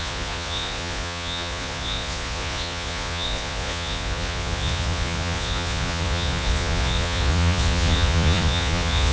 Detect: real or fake fake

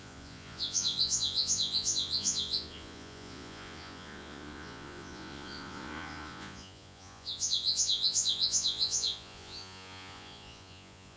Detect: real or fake fake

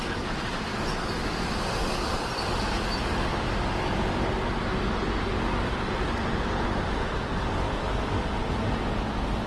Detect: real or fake real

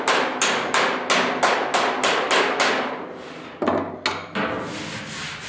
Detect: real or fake real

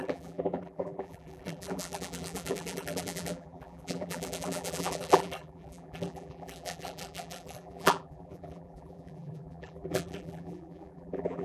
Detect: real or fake fake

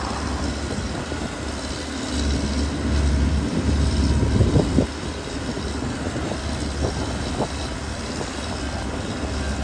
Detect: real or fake real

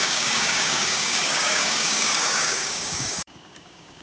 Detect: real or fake fake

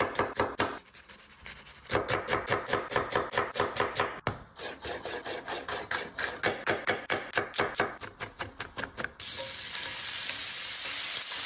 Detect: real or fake real